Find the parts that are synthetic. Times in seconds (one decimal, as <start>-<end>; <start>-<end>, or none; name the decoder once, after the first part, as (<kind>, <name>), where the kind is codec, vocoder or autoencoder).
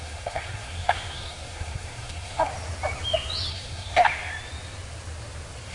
0.0-2.5 (codec, SNAC); 3.5-4.0